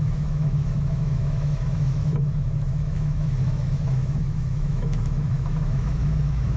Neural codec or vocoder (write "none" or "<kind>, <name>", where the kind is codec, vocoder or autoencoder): autoencoder, DAC-VAE